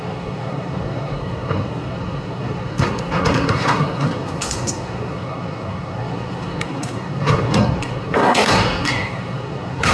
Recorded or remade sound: remade